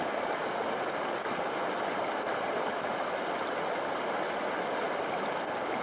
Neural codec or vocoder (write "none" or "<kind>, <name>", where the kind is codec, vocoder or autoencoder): none